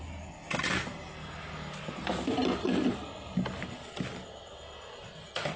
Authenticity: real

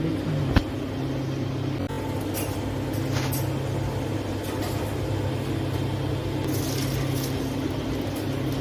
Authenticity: real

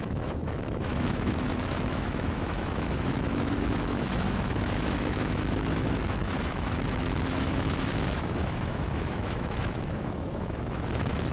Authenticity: fake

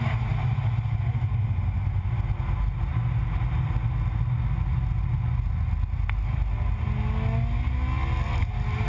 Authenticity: real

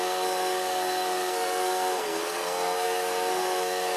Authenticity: fake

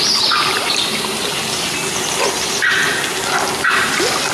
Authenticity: real